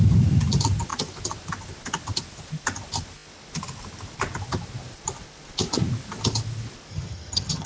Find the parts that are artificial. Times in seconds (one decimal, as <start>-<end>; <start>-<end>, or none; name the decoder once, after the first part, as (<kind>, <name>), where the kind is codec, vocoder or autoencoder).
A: 6.9-7.7 (vocoder, HiFi-GAN)